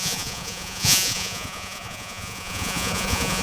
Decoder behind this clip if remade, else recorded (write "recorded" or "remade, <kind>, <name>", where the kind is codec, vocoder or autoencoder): remade, vocoder, Vocos